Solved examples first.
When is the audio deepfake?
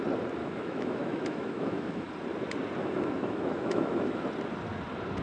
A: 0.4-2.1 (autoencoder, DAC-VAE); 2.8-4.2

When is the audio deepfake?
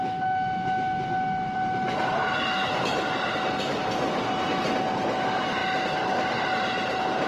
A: 5.6-6.3 (vocoder, BigVGAN v2)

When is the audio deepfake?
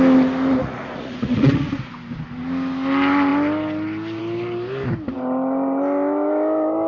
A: 0.6-1.9 (vocoder, Vocos)